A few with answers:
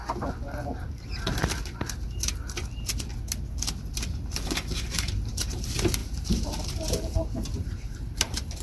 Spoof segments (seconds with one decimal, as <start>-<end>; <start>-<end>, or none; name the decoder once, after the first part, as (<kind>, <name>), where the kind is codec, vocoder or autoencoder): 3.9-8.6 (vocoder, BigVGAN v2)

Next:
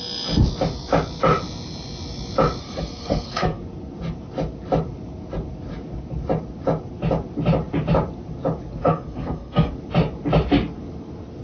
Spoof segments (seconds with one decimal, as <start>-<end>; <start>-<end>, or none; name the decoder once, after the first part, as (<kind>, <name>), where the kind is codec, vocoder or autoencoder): 2.6-3.6 (codec, SNAC); 8.8-9.7

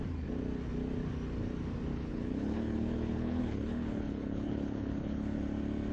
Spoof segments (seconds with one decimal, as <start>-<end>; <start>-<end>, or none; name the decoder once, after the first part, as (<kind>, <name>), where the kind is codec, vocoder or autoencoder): 1.9-5.4 (codec, HILCodec)